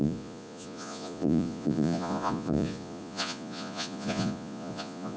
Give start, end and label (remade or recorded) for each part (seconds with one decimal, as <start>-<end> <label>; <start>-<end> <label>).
0.0-5.2 remade